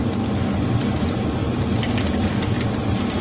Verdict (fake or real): real